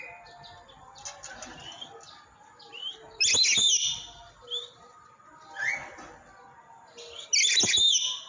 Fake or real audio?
real